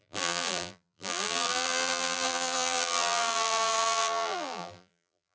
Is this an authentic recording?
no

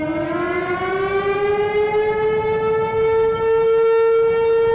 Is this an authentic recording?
yes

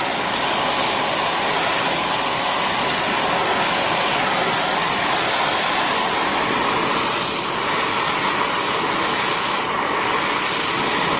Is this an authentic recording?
yes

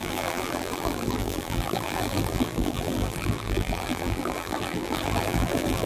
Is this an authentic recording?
no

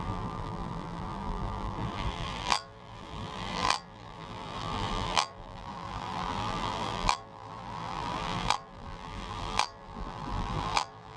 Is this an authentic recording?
no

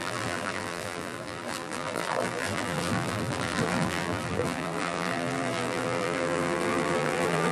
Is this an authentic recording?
no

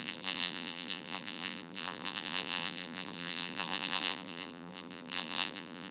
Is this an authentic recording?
no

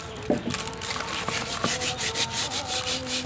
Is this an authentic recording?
yes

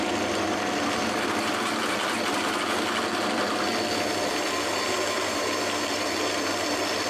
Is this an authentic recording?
yes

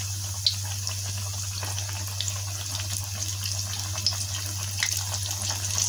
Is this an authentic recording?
yes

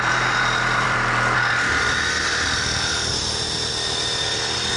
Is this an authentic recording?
yes